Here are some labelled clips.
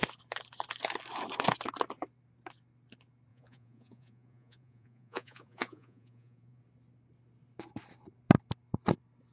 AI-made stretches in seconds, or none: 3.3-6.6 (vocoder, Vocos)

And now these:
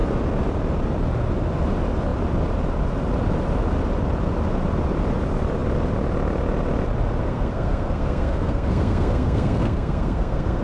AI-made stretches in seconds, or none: 7.2-10.6 (codec, SNAC)

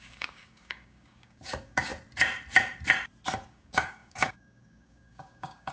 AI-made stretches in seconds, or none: 0.0-1.9 (codec, DAC); 3.5-5.7

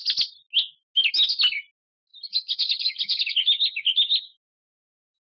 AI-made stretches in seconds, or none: 2.1-5.3 (autoencoder, DAC-VAE)

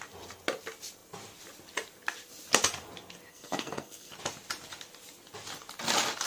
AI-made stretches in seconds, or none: 3.3-4.1 (codec, SNAC)

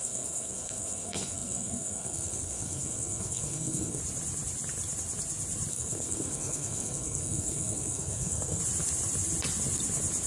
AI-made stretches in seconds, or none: 0.0-4.0 (codec, SNAC); 5.7-8.6

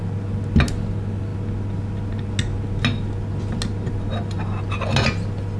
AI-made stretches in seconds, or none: none